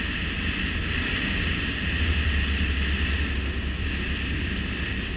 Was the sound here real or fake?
real